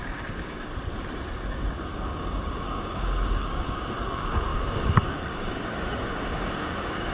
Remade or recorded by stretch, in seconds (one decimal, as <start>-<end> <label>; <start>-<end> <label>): 0.0-0.7 remade; 0.7-1.3 recorded; 1.3-7.1 remade